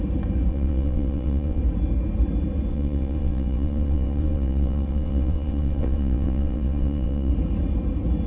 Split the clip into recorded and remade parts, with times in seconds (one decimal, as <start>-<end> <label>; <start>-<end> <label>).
0.0-0.5 recorded; 0.5-1.6 remade; 1.6-2.7 recorded; 2.7-7.3 remade; 7.3-8.3 recorded